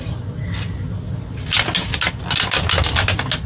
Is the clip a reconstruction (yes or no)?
no